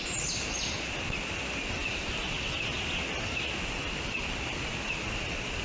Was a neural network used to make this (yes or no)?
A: no